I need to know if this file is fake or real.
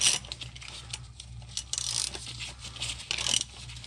real